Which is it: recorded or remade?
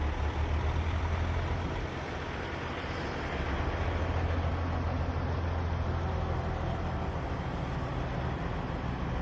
recorded